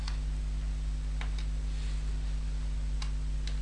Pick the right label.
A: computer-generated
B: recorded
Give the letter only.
B